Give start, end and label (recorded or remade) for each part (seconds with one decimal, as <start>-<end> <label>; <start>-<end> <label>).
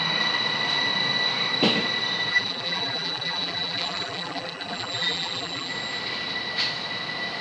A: 0.0-2.3 recorded; 2.3-5.7 remade; 5.7-7.4 recorded